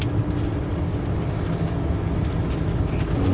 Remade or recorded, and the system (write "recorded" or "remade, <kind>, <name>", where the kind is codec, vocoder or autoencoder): recorded